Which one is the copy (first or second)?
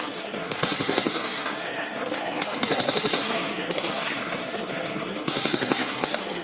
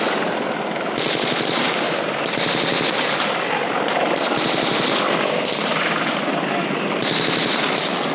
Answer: first